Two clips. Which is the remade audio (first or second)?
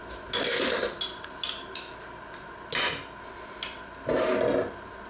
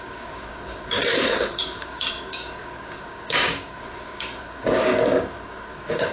second